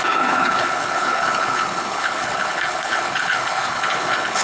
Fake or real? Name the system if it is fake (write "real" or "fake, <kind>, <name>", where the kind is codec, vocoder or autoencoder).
fake, codec, HILCodec